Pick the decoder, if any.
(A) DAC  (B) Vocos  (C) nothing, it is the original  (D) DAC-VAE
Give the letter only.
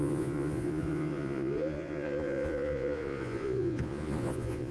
B